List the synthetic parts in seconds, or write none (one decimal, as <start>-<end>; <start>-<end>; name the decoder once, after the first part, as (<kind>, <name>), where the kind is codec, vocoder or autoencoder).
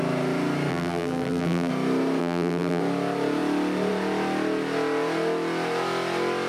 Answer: 0.7-1.7 (vocoder, BigVGAN v2); 2.2-2.8